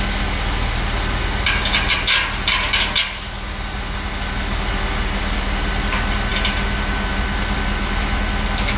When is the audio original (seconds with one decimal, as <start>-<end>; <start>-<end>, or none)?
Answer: 0.0-8.8